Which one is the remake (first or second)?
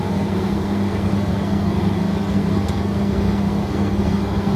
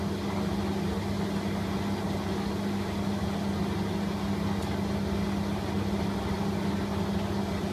first